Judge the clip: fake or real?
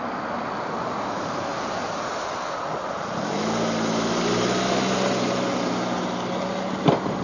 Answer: real